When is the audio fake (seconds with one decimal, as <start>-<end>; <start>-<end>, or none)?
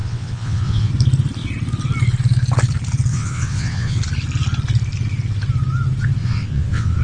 0.0-0.9; 3.1-4.0; 6.2-7.0